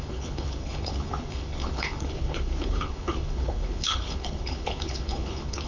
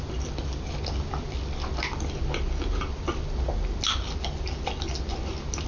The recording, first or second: second